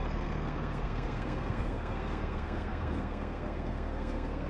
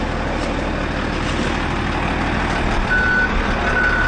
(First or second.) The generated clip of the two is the first